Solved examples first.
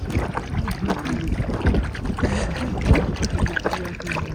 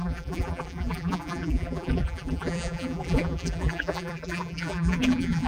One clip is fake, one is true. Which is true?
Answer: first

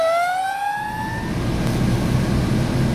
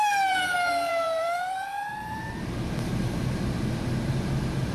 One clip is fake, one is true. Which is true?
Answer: first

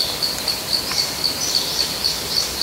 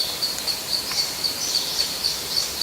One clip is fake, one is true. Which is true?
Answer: first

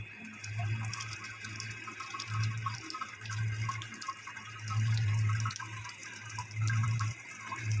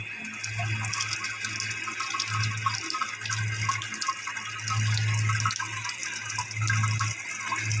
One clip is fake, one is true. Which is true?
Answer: second